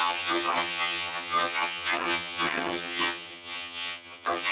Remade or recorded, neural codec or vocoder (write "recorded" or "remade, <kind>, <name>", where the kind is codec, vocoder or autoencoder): remade, vocoder, HiFi-GAN